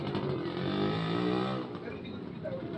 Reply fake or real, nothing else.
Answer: real